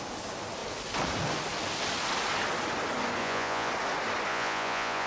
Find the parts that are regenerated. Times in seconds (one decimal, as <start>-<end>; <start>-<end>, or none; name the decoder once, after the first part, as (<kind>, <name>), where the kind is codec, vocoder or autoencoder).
3.2-3.7 (vocoder, Vocos); 4.3-5.1